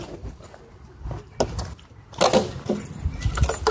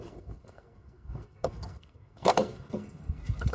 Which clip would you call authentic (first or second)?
first